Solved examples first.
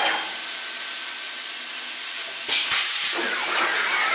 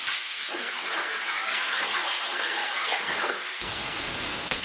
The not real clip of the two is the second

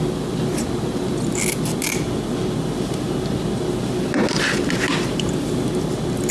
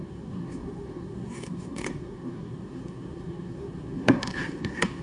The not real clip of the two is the second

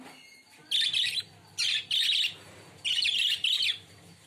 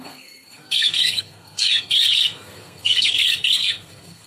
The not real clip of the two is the second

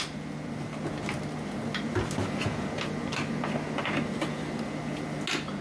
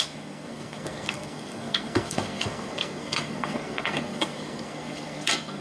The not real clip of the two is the second